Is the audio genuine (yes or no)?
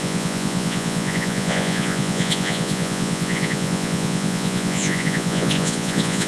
no